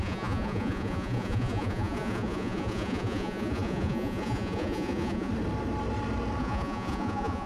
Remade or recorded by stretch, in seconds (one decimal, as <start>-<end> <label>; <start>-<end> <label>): 0.0-5.3 remade; 5.3-6.4 recorded; 6.4-7.5 remade